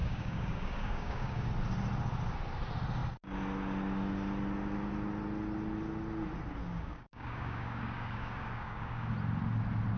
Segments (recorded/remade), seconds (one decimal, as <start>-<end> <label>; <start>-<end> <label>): 0.0-1.5 remade; 1.5-6.6 recorded; 6.6-9.1 remade; 9.1-10.0 recorded